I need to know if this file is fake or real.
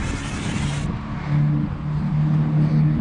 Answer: real